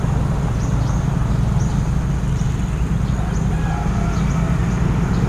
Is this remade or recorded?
recorded